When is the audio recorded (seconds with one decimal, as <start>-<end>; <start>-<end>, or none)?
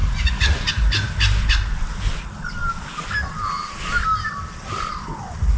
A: 0.7-5.6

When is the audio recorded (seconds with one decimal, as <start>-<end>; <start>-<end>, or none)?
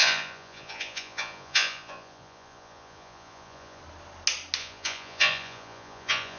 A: 3.8-4.6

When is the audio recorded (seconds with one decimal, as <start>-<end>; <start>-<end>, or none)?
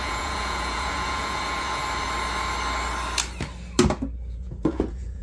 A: 1.8-4.3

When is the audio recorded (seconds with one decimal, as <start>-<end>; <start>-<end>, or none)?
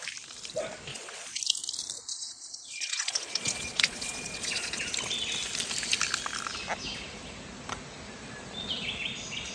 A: 0.0-0.9; 1.4-2.1; 4.9-9.5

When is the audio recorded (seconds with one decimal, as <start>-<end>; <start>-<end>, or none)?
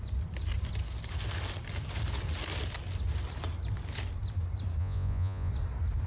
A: 0.0-4.8; 5.5-6.1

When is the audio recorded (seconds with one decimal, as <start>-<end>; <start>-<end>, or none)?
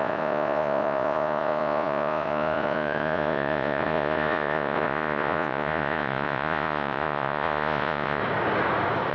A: 8.2-9.1